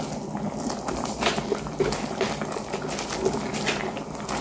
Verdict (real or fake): real